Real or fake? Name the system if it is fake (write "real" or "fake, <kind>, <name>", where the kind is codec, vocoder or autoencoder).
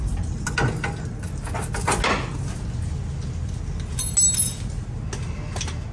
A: real